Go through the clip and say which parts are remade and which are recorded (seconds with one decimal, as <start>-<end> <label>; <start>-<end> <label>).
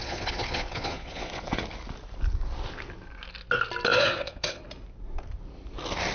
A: 0.0-1.6 remade; 1.6-3.9 recorded; 3.9-4.6 remade; 4.6-6.1 recorded